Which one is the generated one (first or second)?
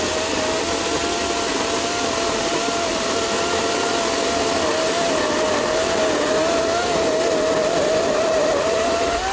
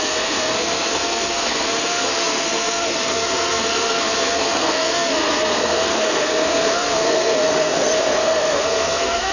second